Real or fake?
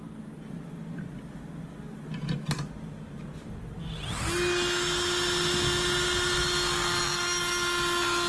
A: real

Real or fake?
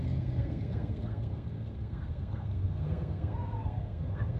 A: fake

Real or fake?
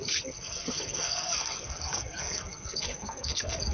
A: fake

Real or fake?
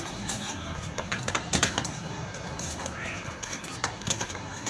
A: fake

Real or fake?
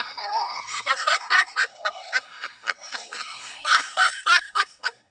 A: fake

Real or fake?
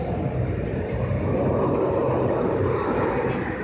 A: real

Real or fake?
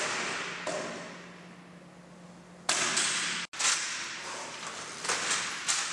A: real